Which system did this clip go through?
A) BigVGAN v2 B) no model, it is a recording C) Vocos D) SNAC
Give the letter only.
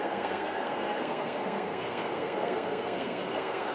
D